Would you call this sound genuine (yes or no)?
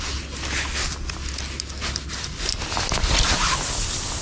yes